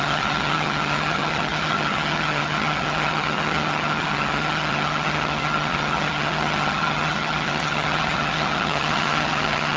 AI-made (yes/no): yes